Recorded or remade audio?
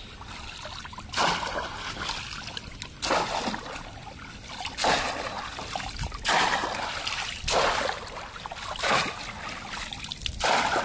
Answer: recorded